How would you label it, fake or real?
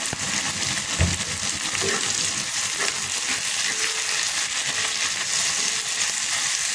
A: real